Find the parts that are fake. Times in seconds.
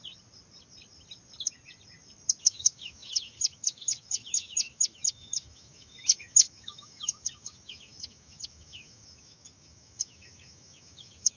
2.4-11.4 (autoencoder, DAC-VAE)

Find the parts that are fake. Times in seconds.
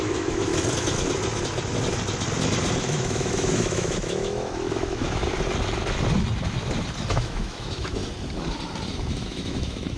0.0-0.5 (autoencoder, DAC-VAE); 2.8-5.2; 7.1-8.0; 9.1-10.0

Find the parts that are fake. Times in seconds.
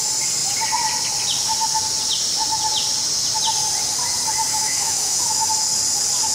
4.5-5.5 (autoencoder, DAC-VAE)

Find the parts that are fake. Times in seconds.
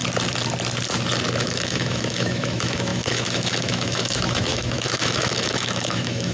1.4-6.3 (autoencoder, DAC-VAE)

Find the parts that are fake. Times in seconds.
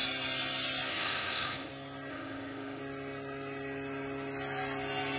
0.9-1.7 (autoencoder, DAC-VAE); 2.1-2.8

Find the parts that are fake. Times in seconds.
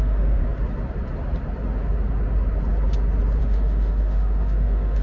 0.0-0.4 (autoencoder, DAC-VAE); 3.4-5.0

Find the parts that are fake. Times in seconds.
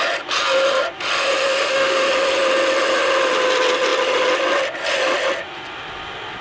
1.5-2.1 (autoencoder, DAC-VAE)